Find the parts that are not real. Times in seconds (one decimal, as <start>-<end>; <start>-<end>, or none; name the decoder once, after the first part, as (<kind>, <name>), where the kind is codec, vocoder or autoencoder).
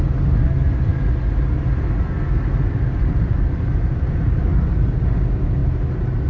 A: none